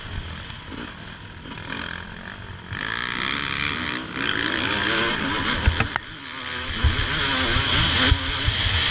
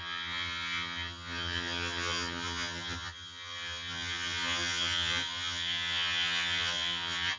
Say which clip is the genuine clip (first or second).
first